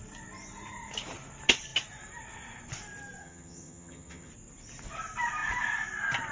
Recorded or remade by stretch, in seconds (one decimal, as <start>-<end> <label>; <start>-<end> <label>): 0.0-3.2 recorded; 3.2-4.3 remade; 4.3-6.3 recorded